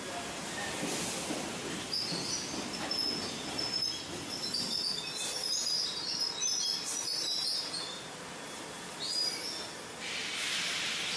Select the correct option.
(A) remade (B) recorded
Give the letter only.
B